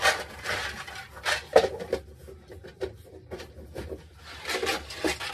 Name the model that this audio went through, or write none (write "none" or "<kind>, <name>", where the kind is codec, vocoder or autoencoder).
none